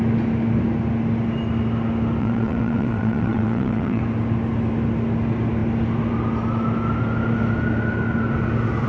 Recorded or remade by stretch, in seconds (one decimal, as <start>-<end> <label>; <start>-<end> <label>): 0.0-2.2 recorded; 2.2-4.0 remade; 4.0-8.9 recorded